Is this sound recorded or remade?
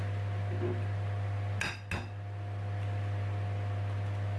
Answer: recorded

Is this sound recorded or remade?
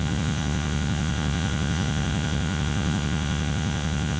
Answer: remade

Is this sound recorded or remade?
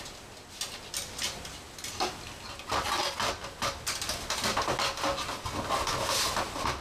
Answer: recorded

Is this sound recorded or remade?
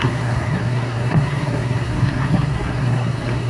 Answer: remade